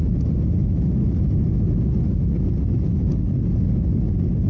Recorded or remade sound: recorded